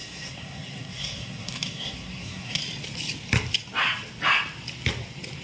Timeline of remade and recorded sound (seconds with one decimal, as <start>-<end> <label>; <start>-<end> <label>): 0.0-2.6 remade; 2.6-5.4 recorded